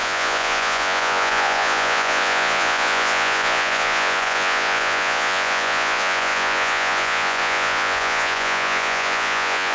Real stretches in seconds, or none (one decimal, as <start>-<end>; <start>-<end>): none